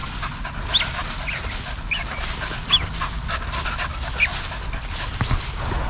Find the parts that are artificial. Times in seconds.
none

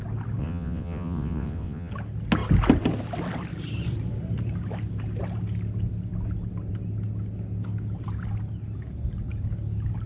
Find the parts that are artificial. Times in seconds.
0.4-1.9 (vocoder, WaveNeXt)

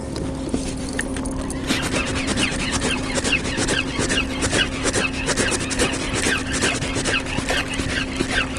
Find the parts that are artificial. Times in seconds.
2.3-3.7 (vocoder, BigVGAN v2)

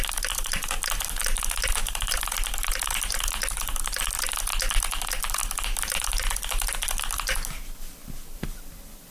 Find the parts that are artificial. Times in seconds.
0.0-1.2 (vocoder, BigVGAN v2); 1.9-5.4; 6.0-9.1

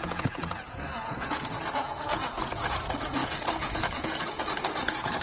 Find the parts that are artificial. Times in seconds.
0.0-5.2 (vocoder, Vocos)